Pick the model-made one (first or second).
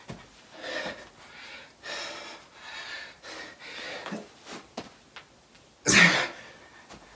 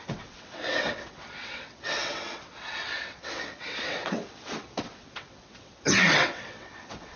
second